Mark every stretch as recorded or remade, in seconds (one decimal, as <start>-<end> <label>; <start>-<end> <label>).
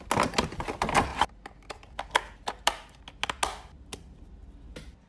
0.0-5.1 recorded